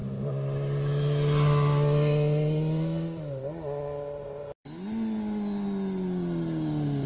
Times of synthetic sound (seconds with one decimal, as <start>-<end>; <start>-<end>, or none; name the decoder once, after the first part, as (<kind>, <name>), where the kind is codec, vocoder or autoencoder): none